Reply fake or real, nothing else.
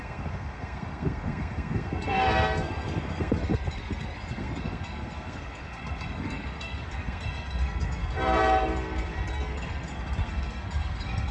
fake